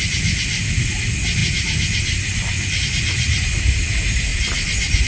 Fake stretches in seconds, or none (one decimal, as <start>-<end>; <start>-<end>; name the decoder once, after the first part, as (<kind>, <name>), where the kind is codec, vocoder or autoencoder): none